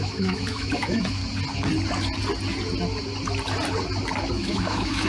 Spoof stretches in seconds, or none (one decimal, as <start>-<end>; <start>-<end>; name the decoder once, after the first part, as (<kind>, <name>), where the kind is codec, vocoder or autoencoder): 0.0-1.2 (autoencoder, DAC-VAE); 4.3-5.1